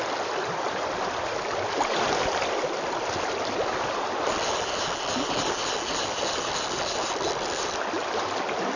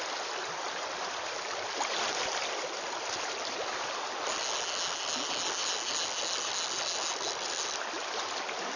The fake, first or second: first